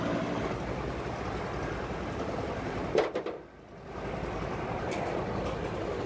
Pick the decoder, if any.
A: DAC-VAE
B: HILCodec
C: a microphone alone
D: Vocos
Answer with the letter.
C